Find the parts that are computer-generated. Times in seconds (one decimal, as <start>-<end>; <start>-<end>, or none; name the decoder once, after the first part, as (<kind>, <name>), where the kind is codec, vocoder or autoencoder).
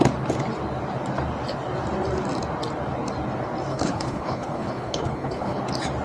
3.7-5.6 (codec, HILCodec)